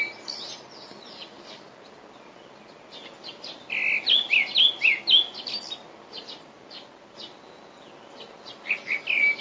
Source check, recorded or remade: recorded